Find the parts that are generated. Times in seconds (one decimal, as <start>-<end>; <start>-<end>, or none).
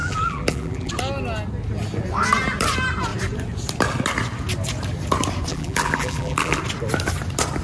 0.0-0.9; 5.5-6.6